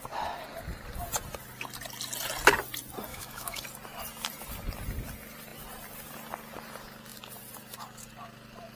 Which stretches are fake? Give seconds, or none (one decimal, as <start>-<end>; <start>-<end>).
3.1-3.6